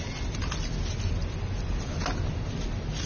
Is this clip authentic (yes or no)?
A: yes